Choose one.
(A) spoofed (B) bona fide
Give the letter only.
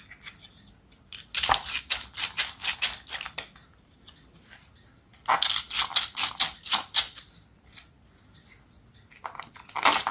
B